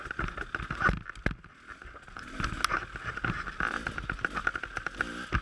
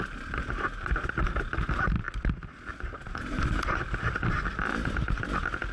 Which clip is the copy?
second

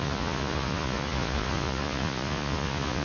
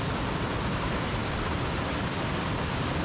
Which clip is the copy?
first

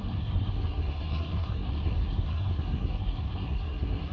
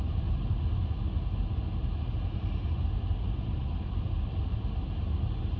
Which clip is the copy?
first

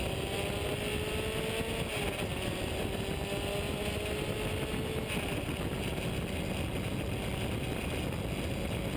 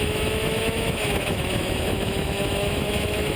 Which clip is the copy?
second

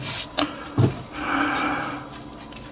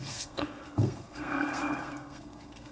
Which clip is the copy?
second